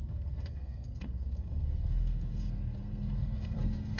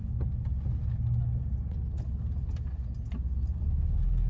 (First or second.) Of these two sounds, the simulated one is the first